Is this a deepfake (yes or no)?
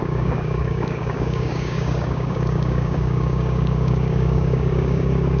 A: yes